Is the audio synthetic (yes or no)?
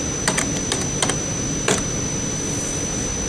no